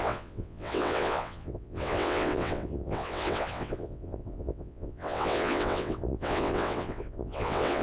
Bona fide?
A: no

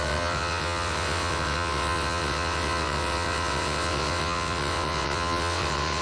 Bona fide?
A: no